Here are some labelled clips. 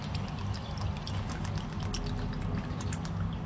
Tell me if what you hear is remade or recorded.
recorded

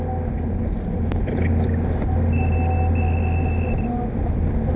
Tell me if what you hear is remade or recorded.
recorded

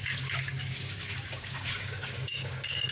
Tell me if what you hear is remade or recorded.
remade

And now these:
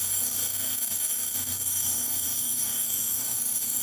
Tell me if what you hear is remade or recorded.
remade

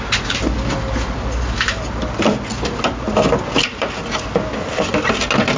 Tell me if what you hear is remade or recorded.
recorded